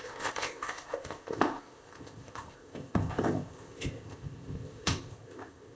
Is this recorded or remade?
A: remade